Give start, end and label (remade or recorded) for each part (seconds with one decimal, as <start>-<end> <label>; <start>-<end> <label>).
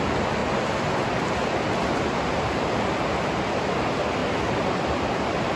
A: 0.0-5.6 recorded